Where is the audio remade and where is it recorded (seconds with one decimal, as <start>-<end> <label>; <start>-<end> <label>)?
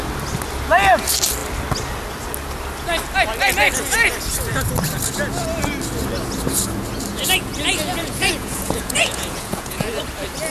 0.0-7.1 recorded; 7.1-10.0 remade; 10.0-10.5 recorded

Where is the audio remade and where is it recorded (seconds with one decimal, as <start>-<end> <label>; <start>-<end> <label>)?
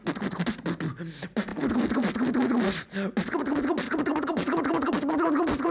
0.0-5.7 recorded